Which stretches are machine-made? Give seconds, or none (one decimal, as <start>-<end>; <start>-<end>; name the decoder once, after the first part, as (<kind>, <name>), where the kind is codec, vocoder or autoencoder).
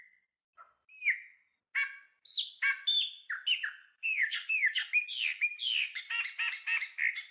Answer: 4.2-6.0 (codec, DAC)